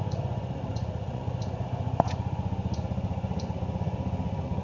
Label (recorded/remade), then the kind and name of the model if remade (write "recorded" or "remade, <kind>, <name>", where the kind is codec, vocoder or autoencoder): remade, vocoder, Vocos